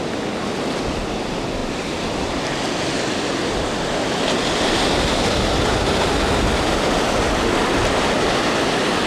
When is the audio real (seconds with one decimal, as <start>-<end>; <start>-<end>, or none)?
0.0-9.1